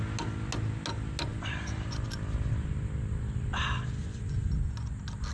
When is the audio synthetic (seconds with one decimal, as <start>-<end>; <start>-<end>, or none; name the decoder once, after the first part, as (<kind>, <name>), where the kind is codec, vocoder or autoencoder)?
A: 4.0-4.5 (vocoder, Vocos)